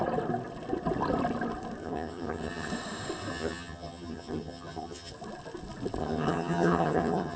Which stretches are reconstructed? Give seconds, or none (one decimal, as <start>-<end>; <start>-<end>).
1.8-2.7; 3.3-5.1; 6.0-7.4